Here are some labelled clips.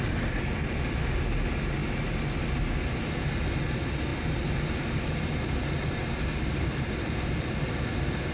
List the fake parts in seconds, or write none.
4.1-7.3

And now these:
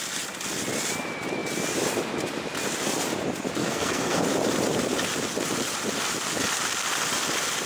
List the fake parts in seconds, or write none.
3.6-4.2

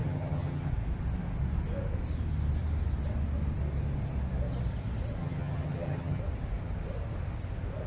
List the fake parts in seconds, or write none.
0.0-0.7; 5.2-6.2

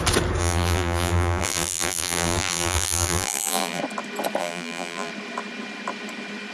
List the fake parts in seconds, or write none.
0.4-3.8; 4.4-5.1

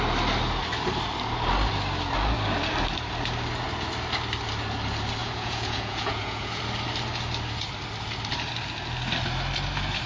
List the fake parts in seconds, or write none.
5.2-6.6

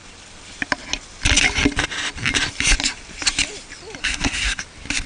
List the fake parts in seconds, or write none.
4.0-4.6